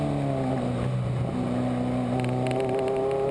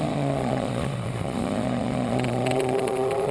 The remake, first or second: second